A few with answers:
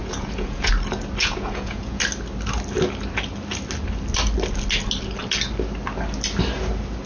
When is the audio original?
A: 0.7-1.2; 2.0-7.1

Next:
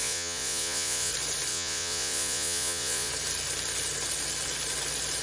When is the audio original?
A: 1.1-1.5; 3.1-5.2

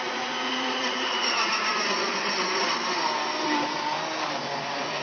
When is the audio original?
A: 1.7-4.6

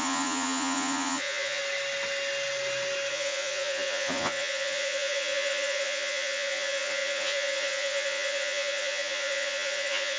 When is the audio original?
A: 1.6-3.1

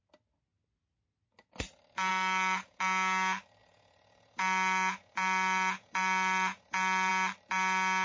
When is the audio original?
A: 0.0-2.1; 2.8-3.6; 7.1-8.0